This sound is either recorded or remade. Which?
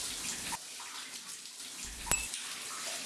recorded